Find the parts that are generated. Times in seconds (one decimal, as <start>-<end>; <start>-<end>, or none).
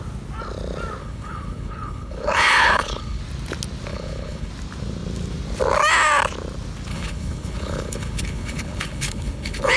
1.0-3.2; 3.9-4.5; 6.9-9.8